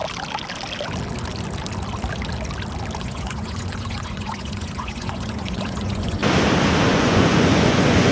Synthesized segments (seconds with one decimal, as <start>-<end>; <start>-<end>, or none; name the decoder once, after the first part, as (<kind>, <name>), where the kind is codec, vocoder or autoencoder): 3.0-6.2 (vocoder, Vocos); 6.9-8.1